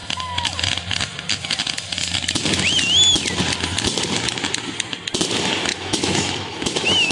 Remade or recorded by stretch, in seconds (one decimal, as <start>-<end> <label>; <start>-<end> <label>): 0.0-5.7 recorded; 5.7-7.1 remade